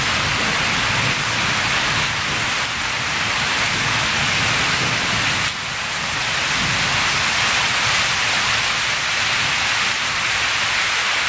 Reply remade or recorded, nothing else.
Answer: recorded